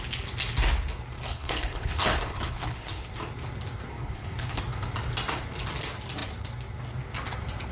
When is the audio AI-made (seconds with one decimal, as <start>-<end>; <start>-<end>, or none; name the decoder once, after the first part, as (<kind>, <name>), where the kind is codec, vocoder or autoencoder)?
1.3-3.1 (codec, HILCodec); 3.9-4.6